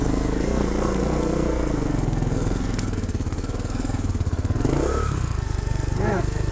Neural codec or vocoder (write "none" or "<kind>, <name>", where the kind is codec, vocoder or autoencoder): codec, SNAC